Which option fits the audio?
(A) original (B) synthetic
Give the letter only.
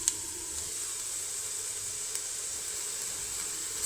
A